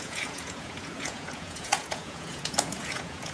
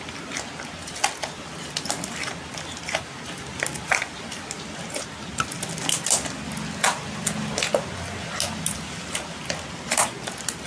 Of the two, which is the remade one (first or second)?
first